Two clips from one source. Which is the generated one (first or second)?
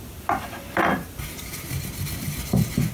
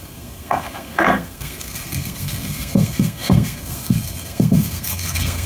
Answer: second